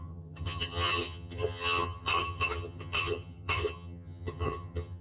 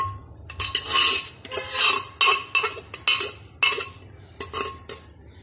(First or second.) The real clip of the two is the second